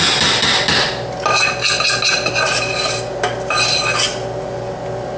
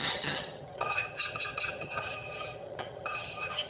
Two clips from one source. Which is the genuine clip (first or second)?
first